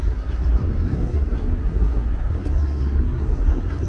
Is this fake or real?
fake